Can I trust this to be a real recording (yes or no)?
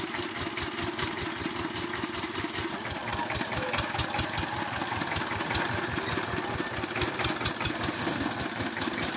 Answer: yes